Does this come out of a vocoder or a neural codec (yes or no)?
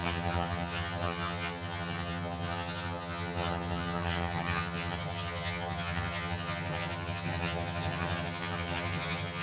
yes